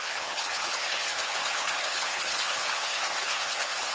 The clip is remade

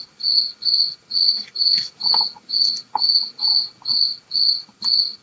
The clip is recorded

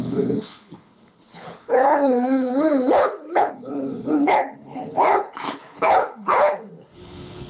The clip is remade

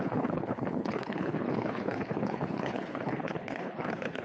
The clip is remade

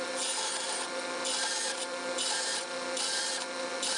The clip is recorded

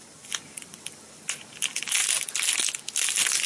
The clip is recorded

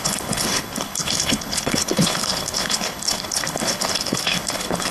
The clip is remade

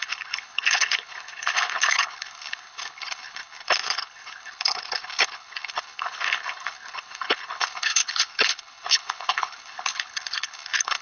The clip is remade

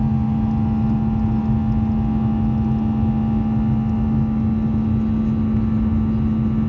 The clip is recorded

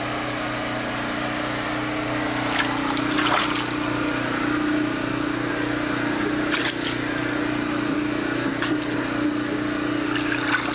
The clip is recorded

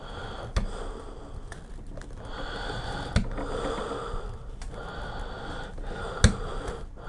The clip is recorded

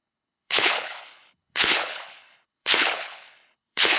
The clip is remade